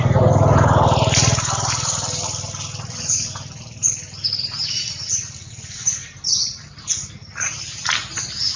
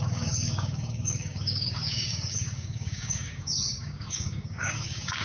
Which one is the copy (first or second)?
second